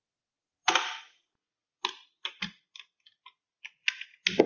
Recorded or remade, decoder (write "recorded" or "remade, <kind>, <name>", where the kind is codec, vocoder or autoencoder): recorded